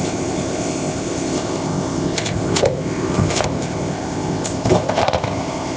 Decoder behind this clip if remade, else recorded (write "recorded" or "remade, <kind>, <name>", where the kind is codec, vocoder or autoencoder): remade, codec, ZipCodec